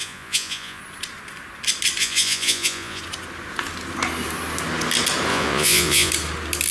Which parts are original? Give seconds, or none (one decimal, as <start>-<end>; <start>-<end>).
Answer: 0.8-2.0; 3.0-5.3; 6.1-6.7

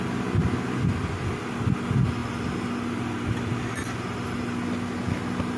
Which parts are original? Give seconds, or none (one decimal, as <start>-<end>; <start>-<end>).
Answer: 0.0-5.6

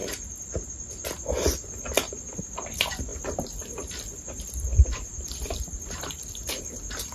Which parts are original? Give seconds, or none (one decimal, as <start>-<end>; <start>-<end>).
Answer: 0.0-2.4

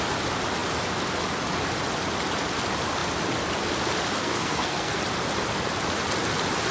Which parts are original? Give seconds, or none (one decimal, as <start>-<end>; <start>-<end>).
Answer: 0.0-4.2; 5.0-6.7

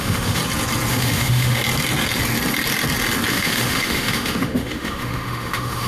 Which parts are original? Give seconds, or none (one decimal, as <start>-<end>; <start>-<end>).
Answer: 0.4-0.9; 1.6-3.3